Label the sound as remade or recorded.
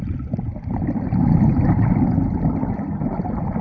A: recorded